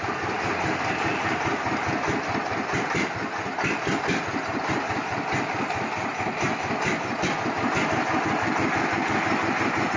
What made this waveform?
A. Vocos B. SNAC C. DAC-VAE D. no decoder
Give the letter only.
D